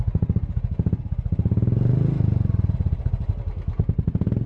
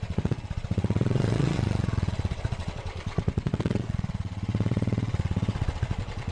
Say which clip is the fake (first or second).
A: second